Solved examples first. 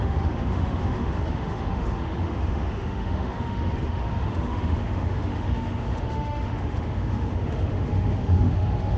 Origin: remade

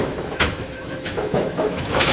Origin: remade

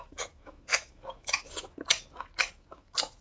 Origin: remade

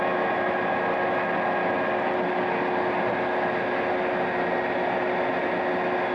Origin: recorded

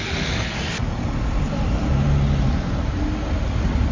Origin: recorded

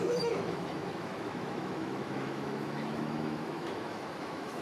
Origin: remade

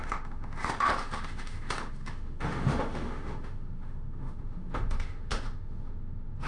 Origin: remade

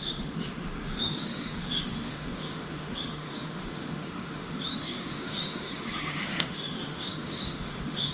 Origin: remade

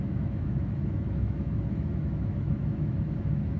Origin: remade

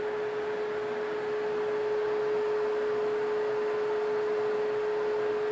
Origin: recorded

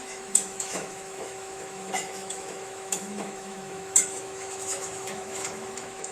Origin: remade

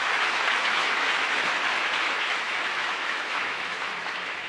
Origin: remade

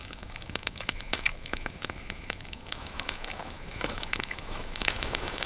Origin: remade